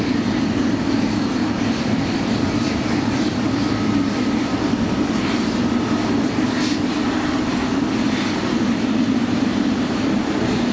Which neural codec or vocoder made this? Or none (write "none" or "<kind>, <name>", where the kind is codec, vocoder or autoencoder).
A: vocoder, BigVGAN v2